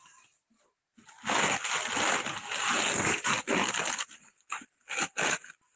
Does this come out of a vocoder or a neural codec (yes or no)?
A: no